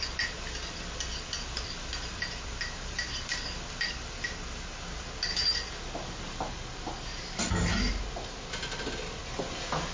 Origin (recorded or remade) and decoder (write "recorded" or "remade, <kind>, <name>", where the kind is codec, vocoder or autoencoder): recorded